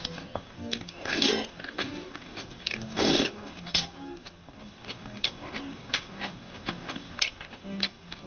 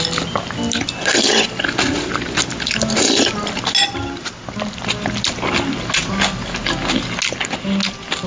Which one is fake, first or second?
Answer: first